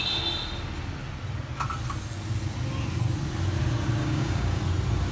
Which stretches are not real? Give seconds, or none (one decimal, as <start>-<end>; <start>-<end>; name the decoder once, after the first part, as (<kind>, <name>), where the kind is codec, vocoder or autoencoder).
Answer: 4.0-4.6 (codec, DAC)